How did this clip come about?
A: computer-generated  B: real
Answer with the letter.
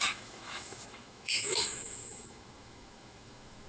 A